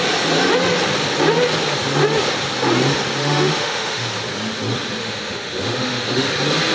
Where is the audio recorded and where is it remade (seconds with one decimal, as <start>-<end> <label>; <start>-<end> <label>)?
0.0-3.2 recorded; 3.2-4.0 remade; 4.0-5.0 recorded; 5.0-6.3 remade; 6.3-6.7 recorded